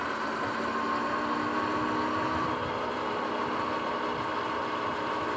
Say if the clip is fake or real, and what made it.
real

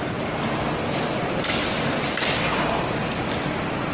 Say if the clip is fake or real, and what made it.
real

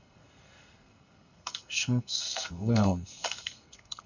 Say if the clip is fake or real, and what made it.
fake, codec, SNAC